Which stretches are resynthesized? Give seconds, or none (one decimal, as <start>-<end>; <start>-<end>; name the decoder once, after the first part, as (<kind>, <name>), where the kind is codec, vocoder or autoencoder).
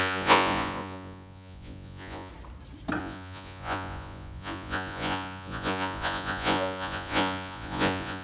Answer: 0.0-2.3 (vocoder, Vocos); 3.0-8.2